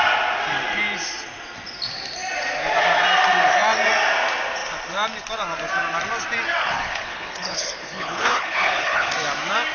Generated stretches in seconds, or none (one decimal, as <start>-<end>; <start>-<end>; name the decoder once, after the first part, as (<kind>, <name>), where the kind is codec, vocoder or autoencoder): 6.6-9.1 (codec, HILCodec)